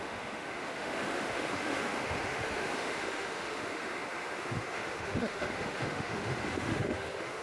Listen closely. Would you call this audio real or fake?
fake